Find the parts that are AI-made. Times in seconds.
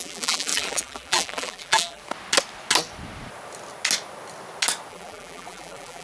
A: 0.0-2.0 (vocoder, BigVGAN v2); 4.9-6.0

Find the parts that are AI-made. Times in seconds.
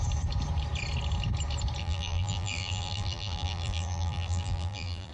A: 1.8-5.1 (vocoder, BigVGAN v2)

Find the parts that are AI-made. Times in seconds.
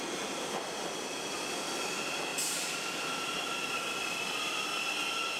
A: 2.3-3.3 (vocoder, BigVGAN v2)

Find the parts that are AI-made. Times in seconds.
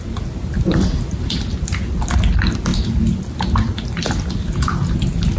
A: none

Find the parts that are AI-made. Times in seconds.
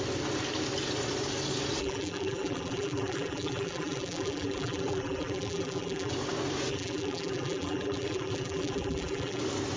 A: 1.8-6.1 (vocoder, BigVGAN v2); 6.7-9.4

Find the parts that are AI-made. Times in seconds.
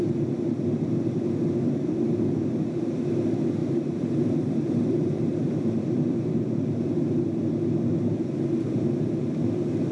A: 3.6-7.1 (vocoder, BigVGAN v2)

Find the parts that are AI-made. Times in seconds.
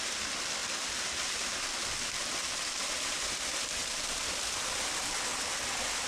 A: 0.0-0.6 (vocoder, BigVGAN v2); 2.9-6.1